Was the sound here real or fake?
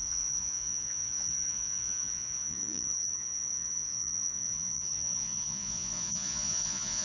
fake